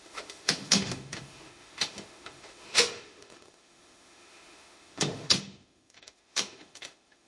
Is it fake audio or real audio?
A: fake